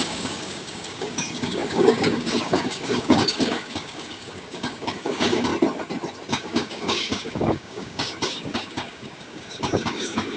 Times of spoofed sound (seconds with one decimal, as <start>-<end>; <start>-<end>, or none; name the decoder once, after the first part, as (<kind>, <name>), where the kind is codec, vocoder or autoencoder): 0.0-5.5 (codec, DAC); 6.3-10.4